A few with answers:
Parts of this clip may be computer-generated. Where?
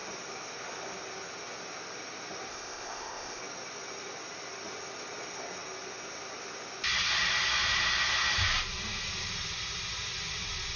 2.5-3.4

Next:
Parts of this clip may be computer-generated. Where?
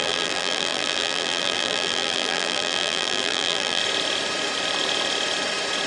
0.0-3.8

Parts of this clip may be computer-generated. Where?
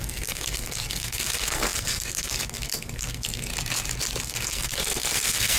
0.0-3.5; 4.2-5.6